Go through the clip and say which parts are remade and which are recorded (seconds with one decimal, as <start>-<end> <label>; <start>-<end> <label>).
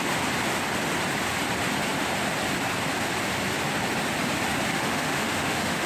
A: 0.0-4.7 recorded; 4.7-5.9 remade